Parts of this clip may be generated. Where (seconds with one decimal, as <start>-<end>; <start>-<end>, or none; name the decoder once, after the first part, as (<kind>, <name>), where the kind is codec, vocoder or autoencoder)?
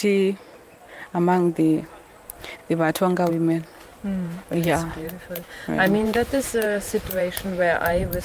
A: 3.9-8.2 (vocoder, BigVGAN v2)